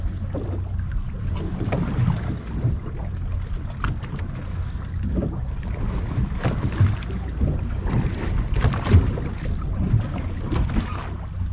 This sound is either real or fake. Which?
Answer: real